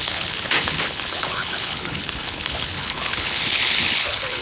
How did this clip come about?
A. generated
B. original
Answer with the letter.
A